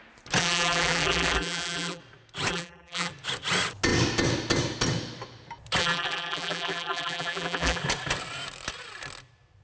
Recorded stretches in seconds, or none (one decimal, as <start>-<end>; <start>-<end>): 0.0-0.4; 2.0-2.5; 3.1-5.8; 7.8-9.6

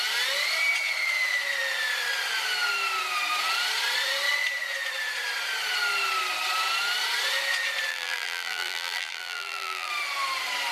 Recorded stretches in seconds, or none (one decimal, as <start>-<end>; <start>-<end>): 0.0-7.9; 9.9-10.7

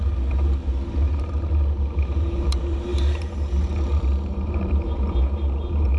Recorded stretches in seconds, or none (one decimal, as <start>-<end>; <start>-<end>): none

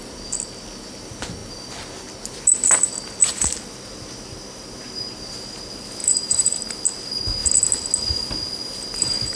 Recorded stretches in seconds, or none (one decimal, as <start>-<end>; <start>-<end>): 0.0-6.0; 6.6-9.4

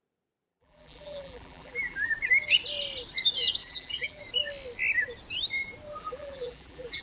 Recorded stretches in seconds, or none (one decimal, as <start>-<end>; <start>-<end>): 0.0-0.5; 2.1-3.6; 4.2-6.0

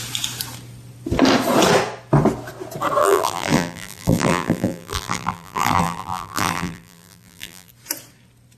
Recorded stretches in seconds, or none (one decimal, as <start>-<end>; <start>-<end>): 0.0-3.0; 7.7-8.6